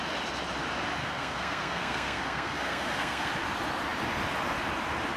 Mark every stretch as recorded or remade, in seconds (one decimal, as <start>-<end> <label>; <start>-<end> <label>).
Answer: 0.0-1.0 recorded; 1.0-3.3 remade; 3.3-5.2 recorded